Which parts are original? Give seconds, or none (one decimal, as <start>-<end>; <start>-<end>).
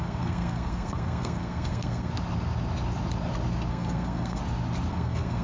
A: 2.1-3.7; 4.4-4.9